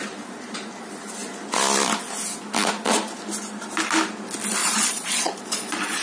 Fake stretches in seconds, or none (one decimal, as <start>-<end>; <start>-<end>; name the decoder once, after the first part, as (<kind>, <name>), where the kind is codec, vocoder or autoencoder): 4.6-6.0 (vocoder, Vocos)